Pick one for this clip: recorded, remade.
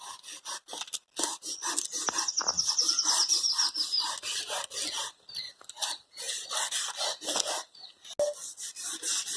recorded